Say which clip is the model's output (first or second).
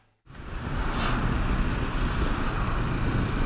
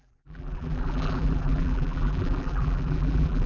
second